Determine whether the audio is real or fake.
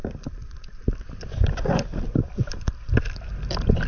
fake